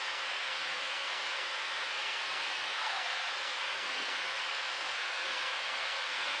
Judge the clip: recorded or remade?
remade